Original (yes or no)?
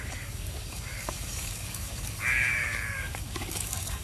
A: no